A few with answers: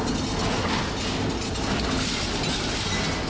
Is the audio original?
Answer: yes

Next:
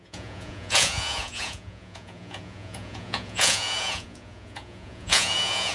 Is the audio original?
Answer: no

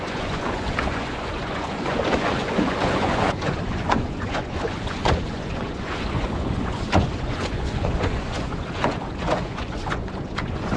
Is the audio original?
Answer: no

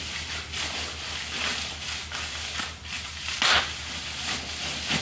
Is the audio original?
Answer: yes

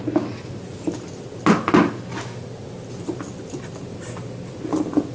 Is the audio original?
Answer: yes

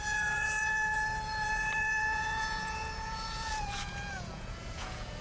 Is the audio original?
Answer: no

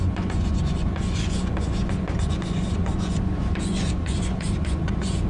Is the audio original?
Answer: no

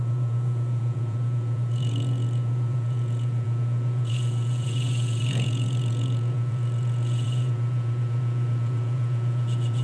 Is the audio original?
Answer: no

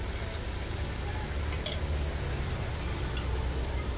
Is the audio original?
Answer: yes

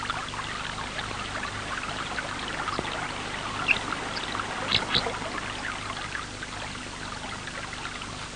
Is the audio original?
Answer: yes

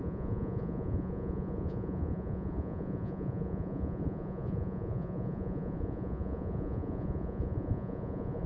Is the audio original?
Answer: no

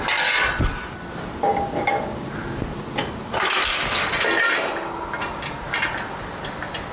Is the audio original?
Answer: yes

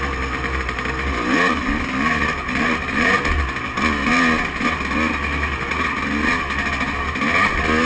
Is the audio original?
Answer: yes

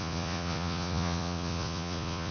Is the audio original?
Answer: no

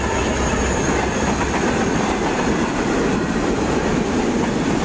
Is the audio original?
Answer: yes